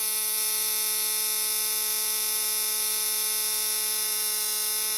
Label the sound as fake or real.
real